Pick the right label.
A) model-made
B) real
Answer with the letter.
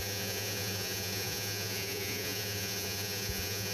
A